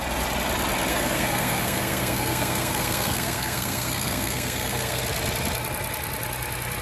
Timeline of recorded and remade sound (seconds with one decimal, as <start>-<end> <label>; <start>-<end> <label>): 0.0-0.9 recorded; 0.9-5.0 remade; 5.0-6.8 recorded